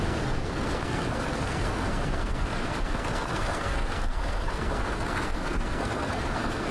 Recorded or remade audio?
remade